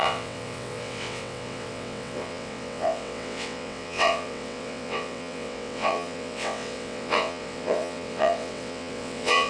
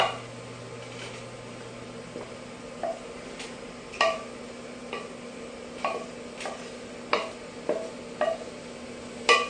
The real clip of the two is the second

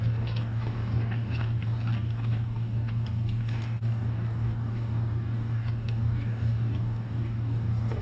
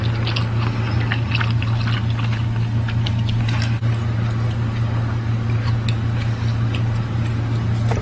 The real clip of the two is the second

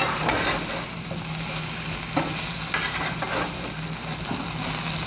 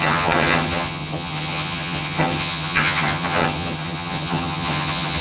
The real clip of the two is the first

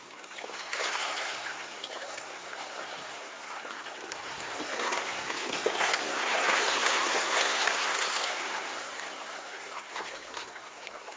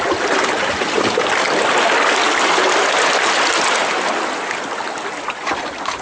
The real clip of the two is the second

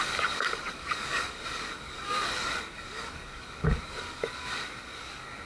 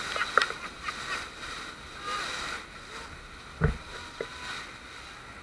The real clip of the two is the second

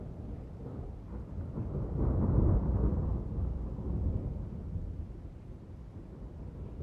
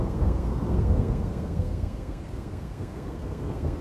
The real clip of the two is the first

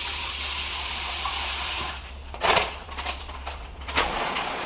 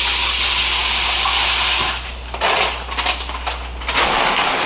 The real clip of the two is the second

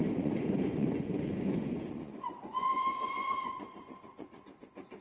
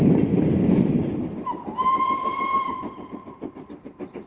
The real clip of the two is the second